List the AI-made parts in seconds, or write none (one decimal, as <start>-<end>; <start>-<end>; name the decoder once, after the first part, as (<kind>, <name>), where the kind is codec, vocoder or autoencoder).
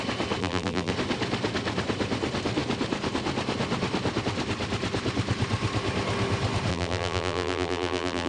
0.4-0.9 (vocoder, BigVGAN v2); 6.7-8.3